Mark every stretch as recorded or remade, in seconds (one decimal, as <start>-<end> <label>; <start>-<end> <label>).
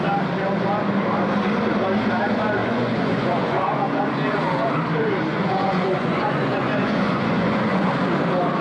0.0-2.6 recorded; 2.6-4.7 remade; 4.7-5.3 recorded; 5.3-7.9 remade; 7.9-8.6 recorded